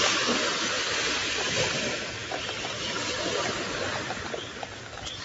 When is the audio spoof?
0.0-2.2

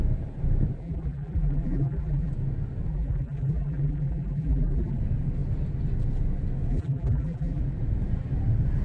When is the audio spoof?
0.8-2.3; 2.9-5.0; 6.7-7.6

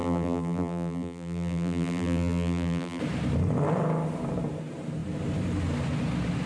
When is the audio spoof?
0.0-3.0

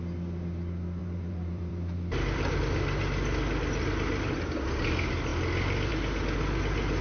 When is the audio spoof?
1.0-2.6

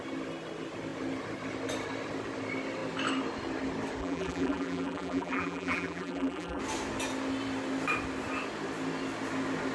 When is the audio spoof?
4.0-6.6

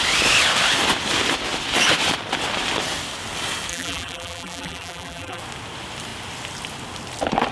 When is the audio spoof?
3.7-5.4

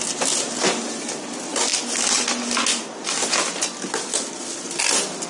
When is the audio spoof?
none

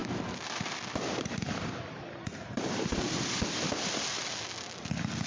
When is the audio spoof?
0.0-3.2